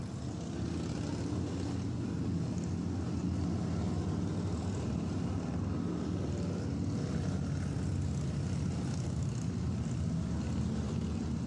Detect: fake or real real